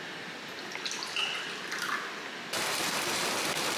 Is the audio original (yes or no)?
yes